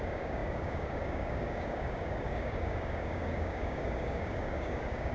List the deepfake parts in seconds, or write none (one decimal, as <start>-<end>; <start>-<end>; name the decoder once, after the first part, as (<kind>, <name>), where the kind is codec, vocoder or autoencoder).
0.0-5.1 (codec, DAC)